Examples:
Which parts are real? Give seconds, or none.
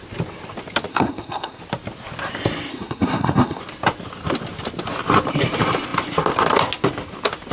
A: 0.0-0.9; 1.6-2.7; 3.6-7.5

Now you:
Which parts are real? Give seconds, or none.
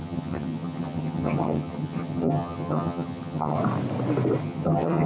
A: 3.6-4.4